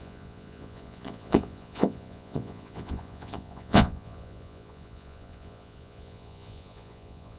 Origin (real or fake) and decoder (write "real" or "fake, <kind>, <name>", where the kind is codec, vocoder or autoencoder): fake, vocoder, Vocos